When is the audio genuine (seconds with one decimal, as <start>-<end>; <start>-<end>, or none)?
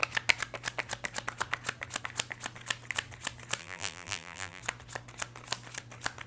0.0-3.6; 4.6-6.3